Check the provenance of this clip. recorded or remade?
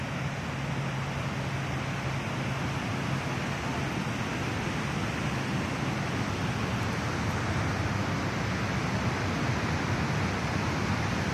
recorded